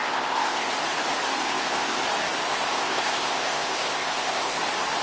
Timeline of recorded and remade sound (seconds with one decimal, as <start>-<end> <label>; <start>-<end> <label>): 0.0-0.7 remade; 0.7-1.4 recorded; 1.4-2.0 remade; 2.0-2.5 recorded; 2.5-4.6 remade; 4.6-5.0 recorded